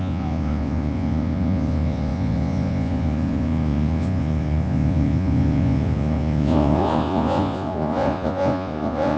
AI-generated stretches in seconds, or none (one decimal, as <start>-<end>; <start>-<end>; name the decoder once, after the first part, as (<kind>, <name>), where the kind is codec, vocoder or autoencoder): 0.0-9.2 (vocoder, Vocos)